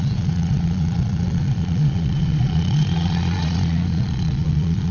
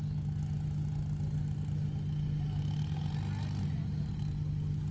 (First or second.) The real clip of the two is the second